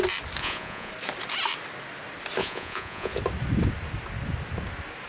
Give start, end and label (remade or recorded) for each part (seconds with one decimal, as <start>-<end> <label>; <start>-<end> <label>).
0.0-0.4 recorded; 0.4-0.9 remade; 0.9-2.4 recorded; 2.4-3.1 remade; 3.1-5.1 recorded